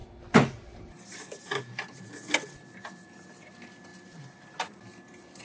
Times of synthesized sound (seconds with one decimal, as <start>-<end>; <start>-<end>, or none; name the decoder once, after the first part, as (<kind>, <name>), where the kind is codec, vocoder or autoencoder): none